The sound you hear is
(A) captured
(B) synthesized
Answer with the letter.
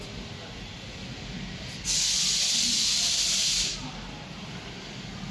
A